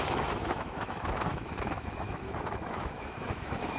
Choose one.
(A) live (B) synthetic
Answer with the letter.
B